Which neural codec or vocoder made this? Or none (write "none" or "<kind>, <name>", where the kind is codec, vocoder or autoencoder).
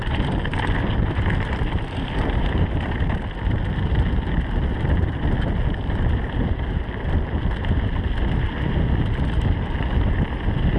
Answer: none